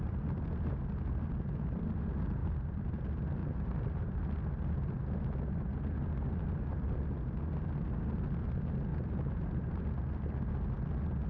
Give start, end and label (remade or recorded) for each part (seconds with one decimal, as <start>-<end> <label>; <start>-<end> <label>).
0.0-2.4 recorded; 2.4-3.0 remade; 3.0-3.4 recorded; 3.4-4.2 remade; 4.2-8.9 recorded; 8.9-9.8 remade; 9.8-11.3 recorded